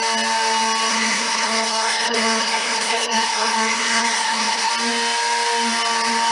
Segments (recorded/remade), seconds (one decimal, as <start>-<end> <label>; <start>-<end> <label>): 0.0-0.9 recorded; 0.9-4.7 remade; 4.7-6.3 recorded